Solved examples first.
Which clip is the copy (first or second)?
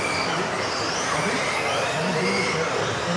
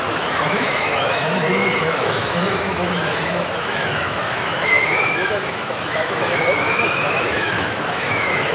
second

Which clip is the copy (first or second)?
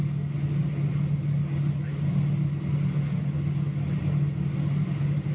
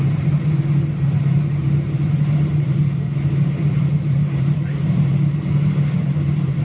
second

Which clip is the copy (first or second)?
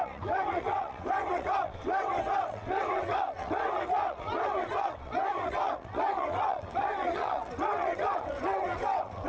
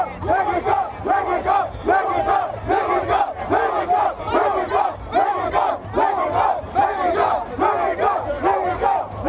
first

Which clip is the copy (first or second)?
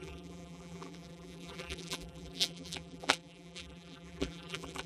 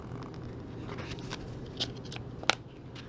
first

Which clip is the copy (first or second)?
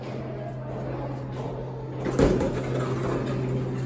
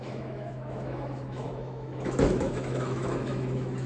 second